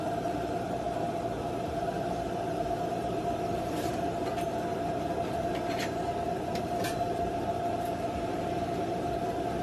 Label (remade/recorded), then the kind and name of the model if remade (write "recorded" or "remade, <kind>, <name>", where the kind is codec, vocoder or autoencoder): remade, vocoder, BigVGAN v2